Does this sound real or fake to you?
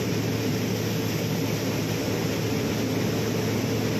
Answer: real